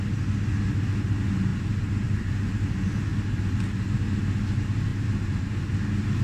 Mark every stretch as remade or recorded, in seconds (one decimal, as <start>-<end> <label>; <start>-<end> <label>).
0.0-1.5 recorded; 1.5-2.3 remade; 2.3-4.9 recorded; 4.9-5.5 remade; 5.5-6.2 recorded

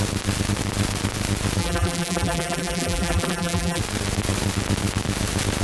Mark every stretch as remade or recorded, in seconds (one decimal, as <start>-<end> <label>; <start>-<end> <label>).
0.0-1.6 recorded; 1.6-3.8 remade; 3.8-5.6 recorded

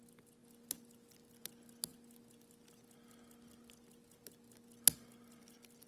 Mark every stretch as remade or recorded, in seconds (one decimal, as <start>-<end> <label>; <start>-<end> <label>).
0.0-5.9 recorded

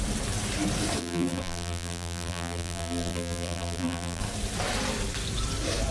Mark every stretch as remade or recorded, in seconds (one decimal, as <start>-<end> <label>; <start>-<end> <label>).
0.0-1.0 recorded; 1.0-4.2 remade; 4.2-5.9 recorded

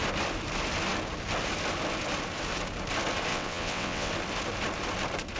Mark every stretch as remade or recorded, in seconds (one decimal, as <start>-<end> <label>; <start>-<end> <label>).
0.0-3.3 recorded; 3.3-4.1 remade; 4.1-5.4 recorded

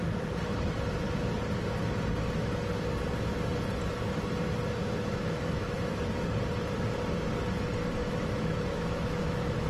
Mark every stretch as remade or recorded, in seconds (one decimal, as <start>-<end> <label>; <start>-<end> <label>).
0.0-4.8 recorded; 4.8-6.3 remade; 6.3-8.0 recorded; 8.0-9.7 remade

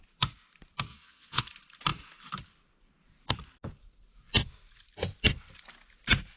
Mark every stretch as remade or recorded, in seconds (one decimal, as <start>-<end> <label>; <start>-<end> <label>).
0.0-0.9 recorded; 0.9-1.4 remade; 1.4-6.4 recorded